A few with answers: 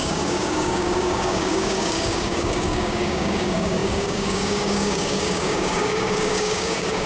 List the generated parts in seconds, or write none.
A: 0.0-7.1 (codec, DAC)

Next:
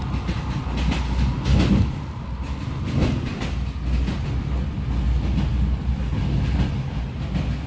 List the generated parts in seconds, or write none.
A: none

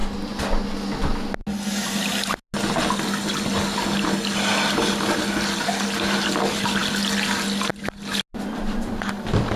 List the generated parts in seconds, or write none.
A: none

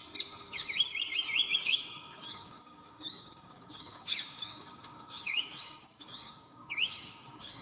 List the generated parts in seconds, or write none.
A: 1.5-7.6 (codec, DAC)

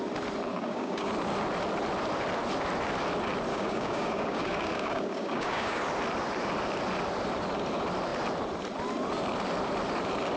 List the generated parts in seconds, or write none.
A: 0.5-1.1 (codec, DAC); 3.5-5.8

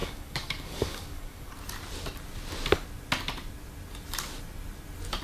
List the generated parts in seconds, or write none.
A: 0.0-1.5 (codec, DAC)

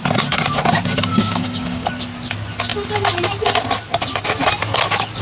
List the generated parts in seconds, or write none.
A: 1.1-1.9 (codec, DAC)